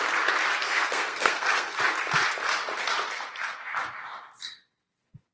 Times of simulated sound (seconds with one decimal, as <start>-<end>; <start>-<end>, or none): 0.5-1.8